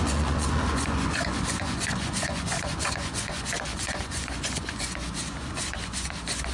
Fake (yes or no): yes